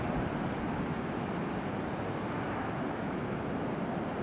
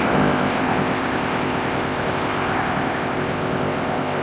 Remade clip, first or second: second